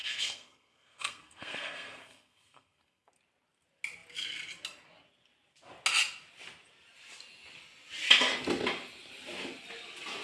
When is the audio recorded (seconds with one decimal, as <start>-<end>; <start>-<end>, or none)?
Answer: 3.1-10.2